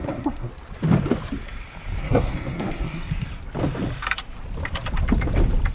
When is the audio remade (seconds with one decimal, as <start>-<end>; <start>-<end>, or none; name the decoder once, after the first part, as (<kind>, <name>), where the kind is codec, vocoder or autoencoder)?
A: 0.0-0.5 (codec, SNAC); 2.0-3.1